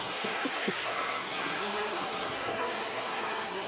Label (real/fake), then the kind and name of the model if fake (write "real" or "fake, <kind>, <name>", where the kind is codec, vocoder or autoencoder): fake, codec, SNAC